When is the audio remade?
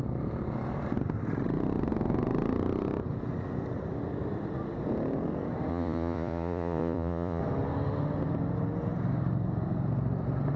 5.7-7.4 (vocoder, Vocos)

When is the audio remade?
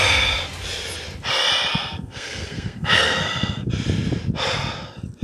1.7-3.7 (codec, SNAC)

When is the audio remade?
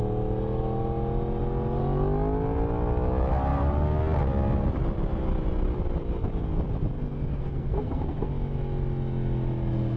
7.3-8.3 (codec, SNAC)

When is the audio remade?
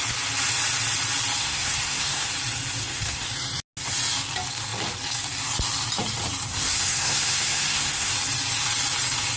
1.4-2.3 (codec, SNAC); 2.8-3.3; 6.5-8.1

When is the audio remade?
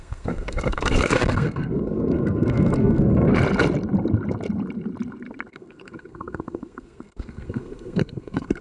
0.0-3.3 (codec, SNAC); 5.5-8.6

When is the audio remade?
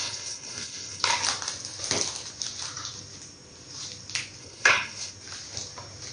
0.0-1.0 (codec, HILCodec); 4.4-5.1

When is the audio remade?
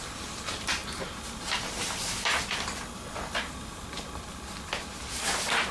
none